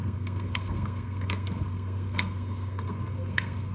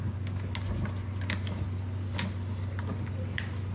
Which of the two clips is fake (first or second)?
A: first